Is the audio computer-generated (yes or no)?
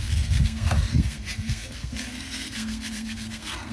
yes